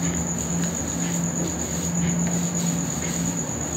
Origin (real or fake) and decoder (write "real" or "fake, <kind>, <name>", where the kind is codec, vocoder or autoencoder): real